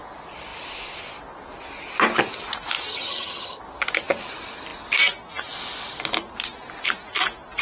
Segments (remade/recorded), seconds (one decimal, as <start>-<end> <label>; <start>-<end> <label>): 0.0-2.9 recorded; 2.9-3.6 remade; 3.6-7.6 recorded